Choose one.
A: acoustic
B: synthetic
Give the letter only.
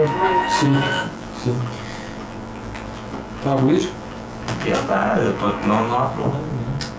B